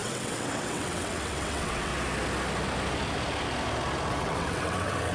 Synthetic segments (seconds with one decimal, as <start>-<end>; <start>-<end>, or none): 0.0-1.9; 4.1-5.1